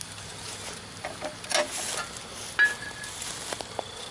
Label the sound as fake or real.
real